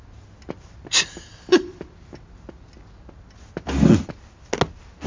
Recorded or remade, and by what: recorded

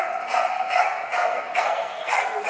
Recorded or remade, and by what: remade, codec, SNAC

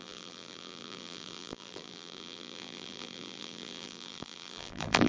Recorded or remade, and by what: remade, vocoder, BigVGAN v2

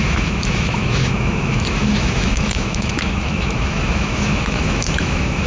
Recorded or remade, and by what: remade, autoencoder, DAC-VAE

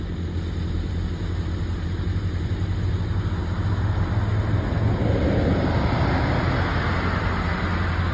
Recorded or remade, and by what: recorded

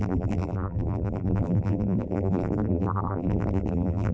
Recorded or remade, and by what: remade, vocoder, BigVGAN v2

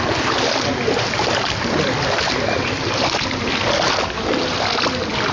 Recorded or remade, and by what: recorded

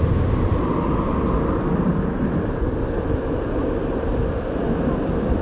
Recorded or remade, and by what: recorded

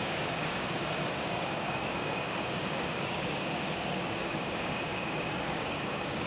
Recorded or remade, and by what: remade, codec, DAC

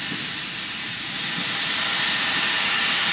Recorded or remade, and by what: recorded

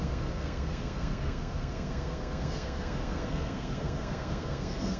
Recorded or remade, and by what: remade, codec, SNAC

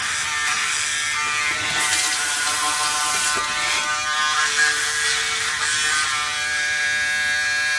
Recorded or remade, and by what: recorded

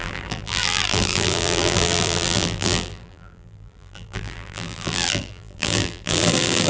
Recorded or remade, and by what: remade, vocoder, BigVGAN v2